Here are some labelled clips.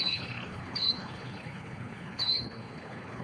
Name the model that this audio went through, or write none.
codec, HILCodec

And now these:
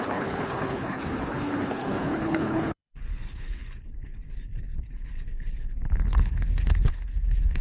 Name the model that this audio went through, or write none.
codec, HILCodec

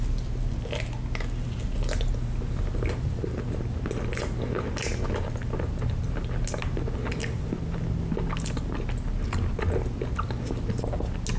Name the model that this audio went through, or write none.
none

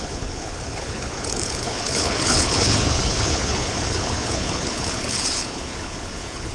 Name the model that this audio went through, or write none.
codec, HILCodec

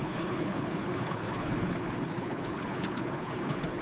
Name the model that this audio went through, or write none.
codec, HILCodec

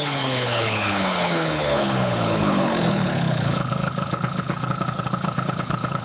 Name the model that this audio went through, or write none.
codec, HILCodec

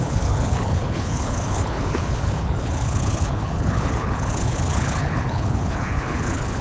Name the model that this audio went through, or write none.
codec, HILCodec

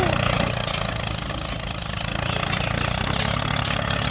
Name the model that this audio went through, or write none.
none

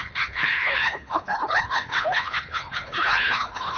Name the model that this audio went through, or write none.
codec, HILCodec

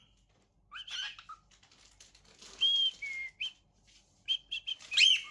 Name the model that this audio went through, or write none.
none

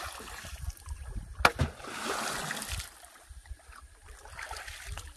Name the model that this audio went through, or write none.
none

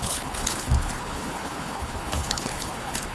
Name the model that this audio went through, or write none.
codec, HILCodec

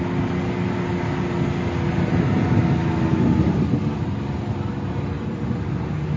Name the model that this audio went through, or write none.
none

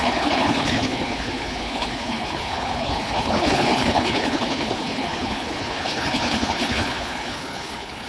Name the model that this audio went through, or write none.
codec, HILCodec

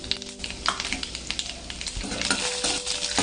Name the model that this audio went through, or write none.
none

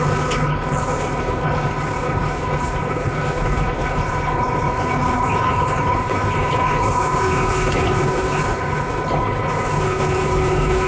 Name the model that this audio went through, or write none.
codec, HILCodec